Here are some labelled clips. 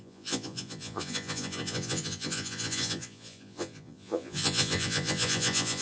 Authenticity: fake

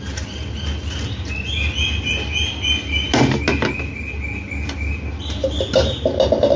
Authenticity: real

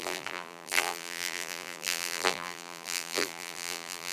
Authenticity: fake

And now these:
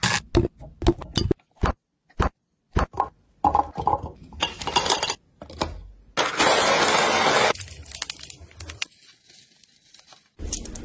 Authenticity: real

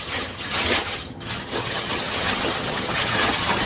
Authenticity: fake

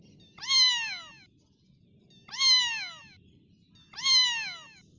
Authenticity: real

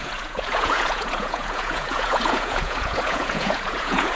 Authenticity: fake